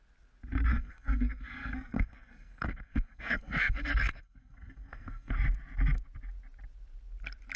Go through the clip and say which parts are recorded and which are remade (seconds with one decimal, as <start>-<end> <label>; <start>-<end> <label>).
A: 0.0-0.7 recorded; 0.7-5.3 remade; 5.3-7.6 recorded